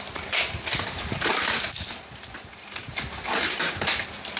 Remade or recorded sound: recorded